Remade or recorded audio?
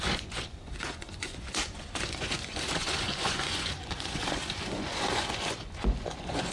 remade